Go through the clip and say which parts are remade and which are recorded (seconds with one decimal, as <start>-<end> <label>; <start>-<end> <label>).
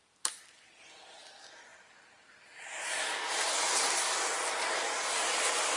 0.0-5.8 recorded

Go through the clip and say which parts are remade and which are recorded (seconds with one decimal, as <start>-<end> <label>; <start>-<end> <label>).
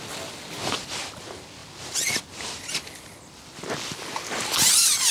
0.0-5.1 recorded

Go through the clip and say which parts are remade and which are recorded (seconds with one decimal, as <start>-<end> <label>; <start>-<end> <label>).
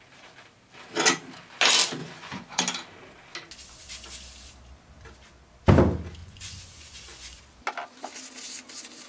0.0-2.0 recorded; 2.0-2.6 remade; 2.6-6.2 recorded; 6.2-7.4 remade; 7.4-9.1 recorded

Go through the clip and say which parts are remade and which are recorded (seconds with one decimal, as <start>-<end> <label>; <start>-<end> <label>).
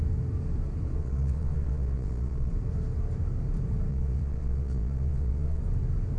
0.0-1.0 recorded; 1.0-2.5 remade; 2.5-3.9 recorded; 3.9-5.6 remade; 5.6-6.2 recorded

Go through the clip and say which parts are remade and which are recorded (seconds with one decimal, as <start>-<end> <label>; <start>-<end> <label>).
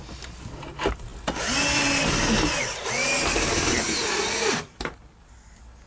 0.0-5.9 recorded